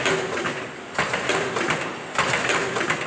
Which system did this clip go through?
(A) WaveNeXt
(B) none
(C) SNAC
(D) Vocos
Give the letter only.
B